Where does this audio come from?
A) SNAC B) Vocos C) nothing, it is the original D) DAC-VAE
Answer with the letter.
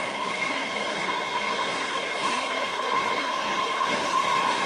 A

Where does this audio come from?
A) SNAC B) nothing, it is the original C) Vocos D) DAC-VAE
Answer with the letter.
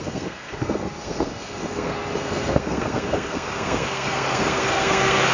A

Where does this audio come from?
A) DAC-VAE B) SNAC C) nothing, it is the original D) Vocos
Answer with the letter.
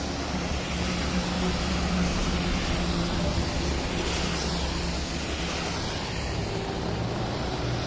C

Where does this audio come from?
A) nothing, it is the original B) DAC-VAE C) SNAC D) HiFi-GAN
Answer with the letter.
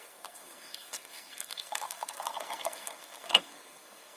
C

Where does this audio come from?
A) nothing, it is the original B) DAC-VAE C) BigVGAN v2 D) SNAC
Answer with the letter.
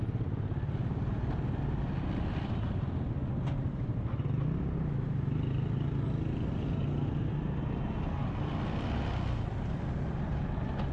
A